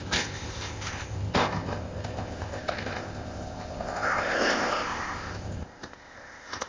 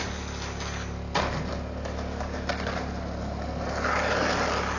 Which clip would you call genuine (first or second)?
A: second